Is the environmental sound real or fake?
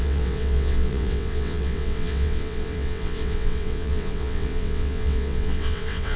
fake